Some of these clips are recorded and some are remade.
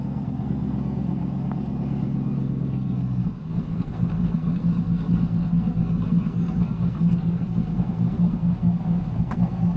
remade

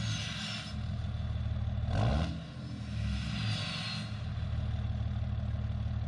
recorded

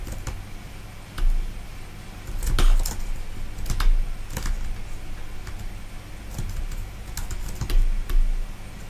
recorded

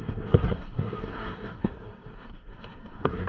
remade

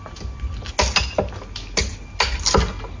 recorded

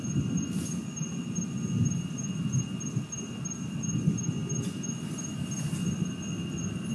recorded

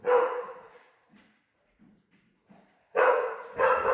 remade